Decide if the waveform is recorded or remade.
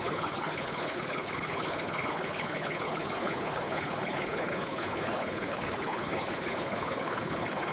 remade